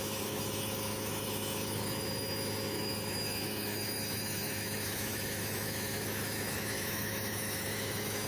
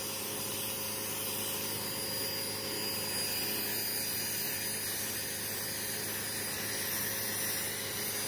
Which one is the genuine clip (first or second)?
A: second